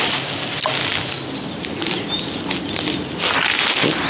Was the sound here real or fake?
real